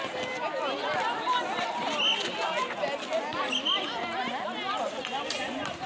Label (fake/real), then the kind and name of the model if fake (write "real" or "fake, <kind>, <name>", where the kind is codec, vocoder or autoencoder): real